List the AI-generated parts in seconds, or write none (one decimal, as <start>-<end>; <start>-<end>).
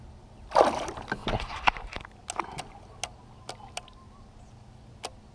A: none